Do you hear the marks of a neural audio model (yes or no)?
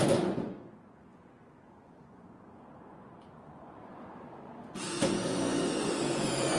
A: yes